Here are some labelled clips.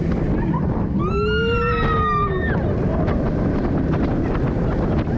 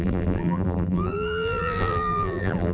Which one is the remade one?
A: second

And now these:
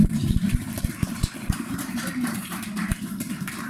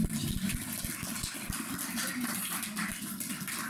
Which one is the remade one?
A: first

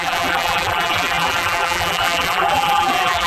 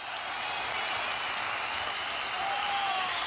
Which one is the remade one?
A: first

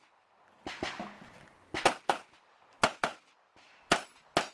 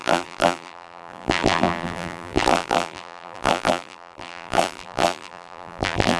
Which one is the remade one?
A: second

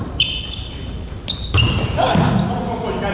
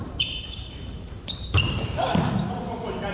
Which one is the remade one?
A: second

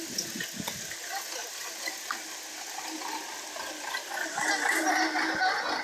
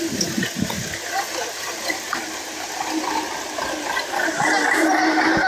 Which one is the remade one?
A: second